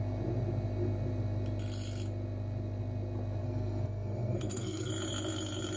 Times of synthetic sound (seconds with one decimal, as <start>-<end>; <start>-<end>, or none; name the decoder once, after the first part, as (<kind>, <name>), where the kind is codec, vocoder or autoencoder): 3.4-4.9 (codec, SNAC)